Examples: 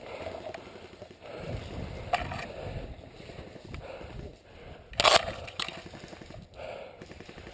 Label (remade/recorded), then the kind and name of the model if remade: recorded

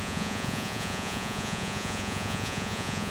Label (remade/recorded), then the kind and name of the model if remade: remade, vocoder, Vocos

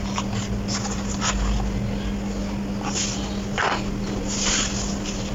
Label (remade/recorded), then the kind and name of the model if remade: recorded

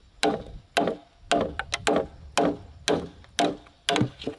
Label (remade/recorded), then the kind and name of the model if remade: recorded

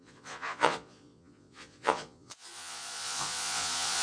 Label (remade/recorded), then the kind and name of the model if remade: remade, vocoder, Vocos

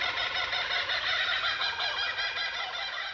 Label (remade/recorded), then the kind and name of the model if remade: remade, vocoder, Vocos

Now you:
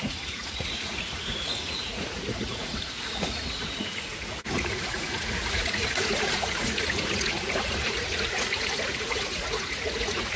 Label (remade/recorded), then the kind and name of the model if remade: remade, vocoder, Vocos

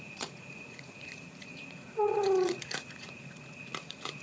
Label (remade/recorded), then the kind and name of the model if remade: remade, vocoder, Vocos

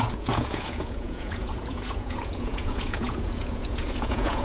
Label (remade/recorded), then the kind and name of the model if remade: remade, vocoder, Vocos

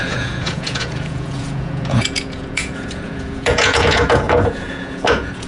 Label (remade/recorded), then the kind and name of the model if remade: remade, vocoder, Vocos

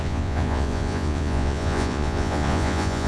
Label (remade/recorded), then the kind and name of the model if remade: remade, vocoder, Vocos